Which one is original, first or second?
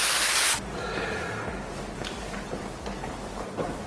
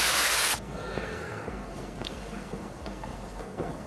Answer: first